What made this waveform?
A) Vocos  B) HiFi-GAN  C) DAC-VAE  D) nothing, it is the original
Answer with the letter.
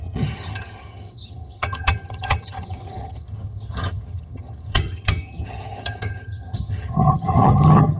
B